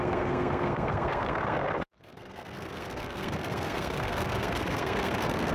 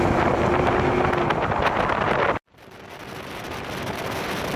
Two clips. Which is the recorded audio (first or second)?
second